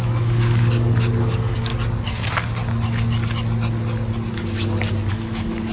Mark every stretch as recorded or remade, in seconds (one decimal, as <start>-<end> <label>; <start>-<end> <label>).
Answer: 0.0-1.7 remade; 1.7-5.1 recorded; 5.1-5.7 remade